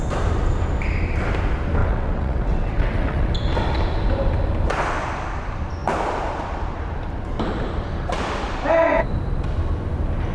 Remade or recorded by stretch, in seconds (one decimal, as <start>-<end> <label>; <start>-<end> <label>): 0.0-1.8 recorded; 1.8-3.3 remade; 3.3-10.3 recorded